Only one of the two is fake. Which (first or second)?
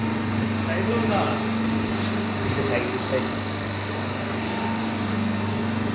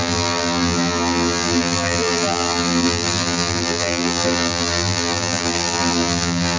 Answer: second